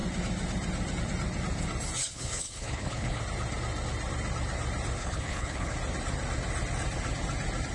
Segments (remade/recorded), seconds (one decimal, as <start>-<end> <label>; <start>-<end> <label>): 0.0-2.0 recorded; 2.0-3.2 remade; 3.2-5.0 recorded; 5.0-5.7 remade; 5.7-7.7 recorded